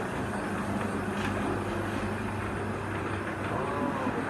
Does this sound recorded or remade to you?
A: recorded